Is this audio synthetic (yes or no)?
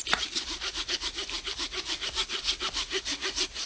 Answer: no